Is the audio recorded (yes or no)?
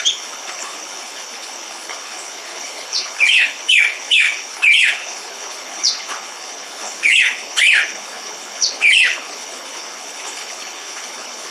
no